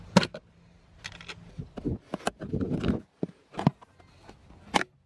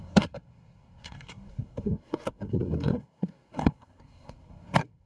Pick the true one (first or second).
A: first